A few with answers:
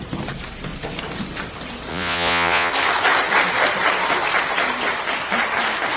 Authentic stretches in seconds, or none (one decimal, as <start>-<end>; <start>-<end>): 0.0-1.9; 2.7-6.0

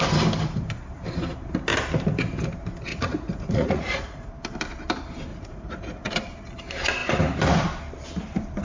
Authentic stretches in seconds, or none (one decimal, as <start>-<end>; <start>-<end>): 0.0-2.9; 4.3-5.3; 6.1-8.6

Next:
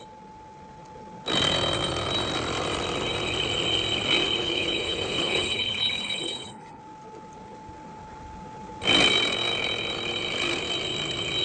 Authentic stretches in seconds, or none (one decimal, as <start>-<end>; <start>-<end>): 0.0-4.4; 6.8-11.4

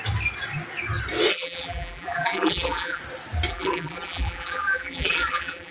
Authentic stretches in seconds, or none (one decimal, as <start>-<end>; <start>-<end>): 0.0-1.3; 3.0-3.5

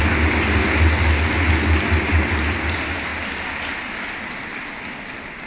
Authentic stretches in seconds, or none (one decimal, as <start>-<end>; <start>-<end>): 0.0-5.5